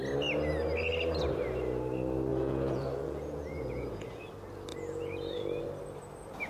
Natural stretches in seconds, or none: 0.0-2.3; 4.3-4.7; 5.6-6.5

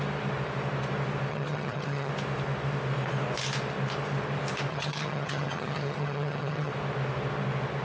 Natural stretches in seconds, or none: 0.0-1.3; 2.1-4.7; 6.7-7.8

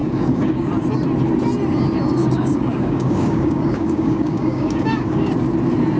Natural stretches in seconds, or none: 0.7-2.2; 5.3-6.0

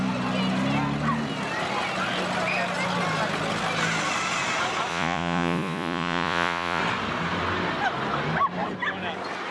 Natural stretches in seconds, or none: 0.0-4.9; 6.8-9.5